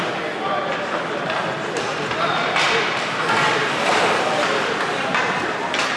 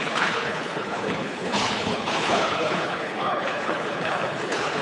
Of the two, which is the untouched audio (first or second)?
first